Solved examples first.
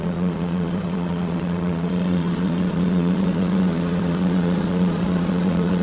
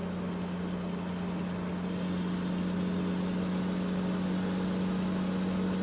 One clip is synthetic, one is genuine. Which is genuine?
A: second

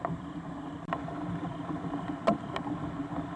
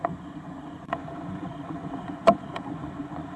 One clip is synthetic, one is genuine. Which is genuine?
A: first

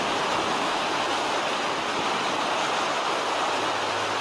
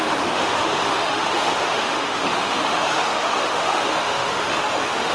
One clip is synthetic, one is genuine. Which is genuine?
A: first